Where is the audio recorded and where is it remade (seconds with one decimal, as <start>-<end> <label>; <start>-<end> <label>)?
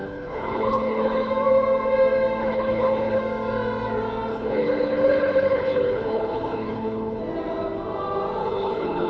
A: 0.0-1.3 remade; 1.3-2.4 recorded; 2.4-3.2 remade; 3.2-4.3 recorded; 4.3-7.2 remade; 7.2-8.4 recorded; 8.4-9.1 remade